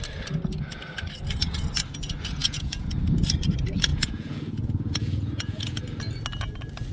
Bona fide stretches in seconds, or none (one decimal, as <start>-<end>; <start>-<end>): 0.0-2.4; 2.9-3.9; 5.8-6.9